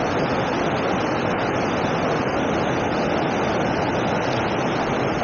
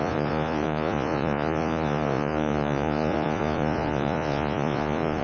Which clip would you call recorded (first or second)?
first